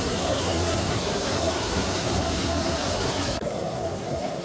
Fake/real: fake